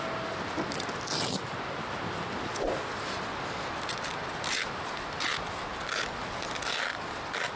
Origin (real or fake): real